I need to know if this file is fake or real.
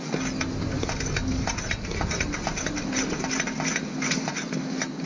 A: real